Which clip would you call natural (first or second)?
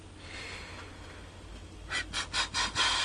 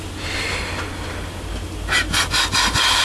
second